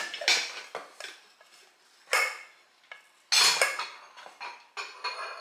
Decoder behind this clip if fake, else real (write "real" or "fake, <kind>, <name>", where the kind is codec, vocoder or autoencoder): real